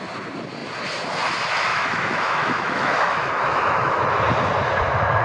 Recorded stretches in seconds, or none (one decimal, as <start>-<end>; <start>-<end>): 0.0-1.7; 4.0-5.2